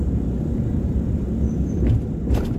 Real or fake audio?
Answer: real